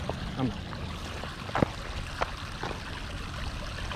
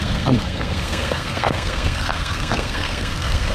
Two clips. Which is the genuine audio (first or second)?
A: first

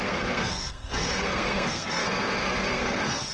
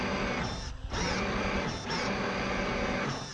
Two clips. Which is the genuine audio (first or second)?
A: second